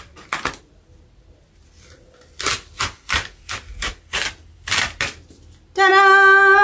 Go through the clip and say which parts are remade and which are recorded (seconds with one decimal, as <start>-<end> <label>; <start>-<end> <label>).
0.0-6.6 recorded